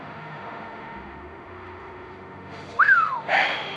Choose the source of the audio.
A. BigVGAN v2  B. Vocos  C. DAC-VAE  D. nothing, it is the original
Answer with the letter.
C